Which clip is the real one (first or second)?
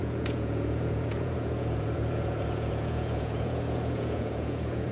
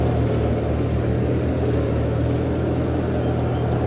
second